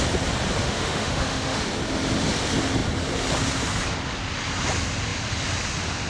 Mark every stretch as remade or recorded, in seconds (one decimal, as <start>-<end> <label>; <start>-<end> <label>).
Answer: 0.0-0.6 recorded; 0.6-1.6 remade; 1.6-6.1 recorded